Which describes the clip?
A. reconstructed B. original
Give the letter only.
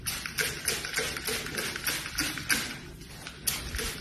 B